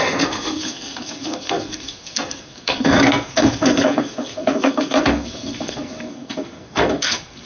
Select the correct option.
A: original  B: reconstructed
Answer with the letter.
B